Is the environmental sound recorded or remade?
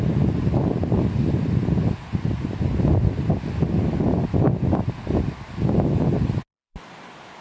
recorded